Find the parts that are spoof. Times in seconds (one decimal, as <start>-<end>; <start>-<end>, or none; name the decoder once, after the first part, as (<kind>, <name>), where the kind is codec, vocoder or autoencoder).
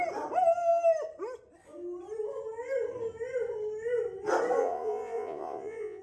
4.6-6.0 (vocoder, Vocos)